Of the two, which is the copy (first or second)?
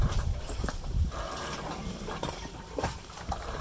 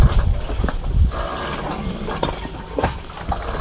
first